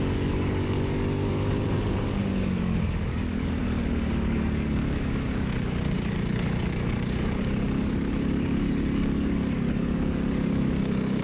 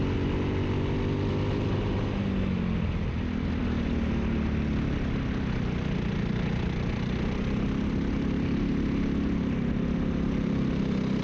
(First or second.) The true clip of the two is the second